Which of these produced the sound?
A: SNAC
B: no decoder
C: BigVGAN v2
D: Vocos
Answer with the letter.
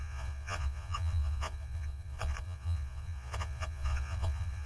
D